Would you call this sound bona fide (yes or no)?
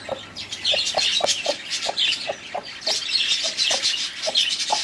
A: yes